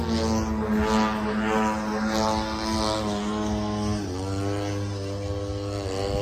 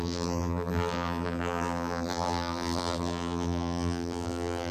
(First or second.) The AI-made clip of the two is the second